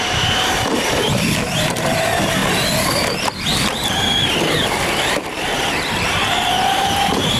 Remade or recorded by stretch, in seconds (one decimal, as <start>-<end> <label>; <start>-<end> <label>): 0.0-2.4 remade; 2.4-5.1 recorded; 5.1-7.4 remade